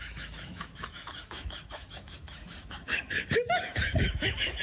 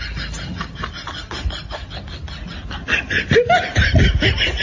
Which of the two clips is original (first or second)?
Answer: second